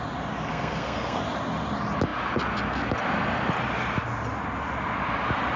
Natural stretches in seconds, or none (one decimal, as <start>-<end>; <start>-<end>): 0.0-0.5; 1.2-5.6